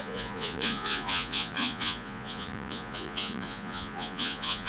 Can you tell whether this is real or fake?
fake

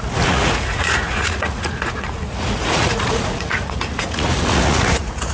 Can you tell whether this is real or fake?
fake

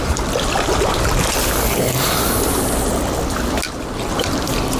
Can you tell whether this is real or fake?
real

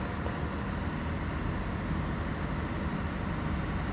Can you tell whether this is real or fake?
real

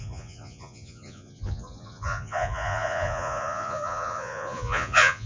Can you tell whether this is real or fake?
fake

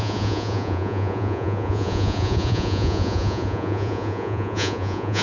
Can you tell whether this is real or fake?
fake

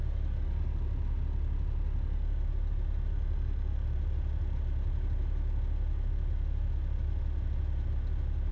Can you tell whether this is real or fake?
real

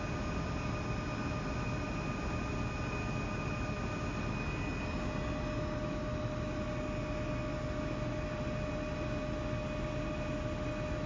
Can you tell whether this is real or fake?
real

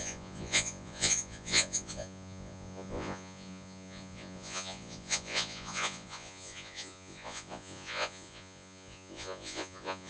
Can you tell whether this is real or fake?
fake